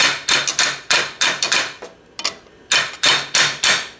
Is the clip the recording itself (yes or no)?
yes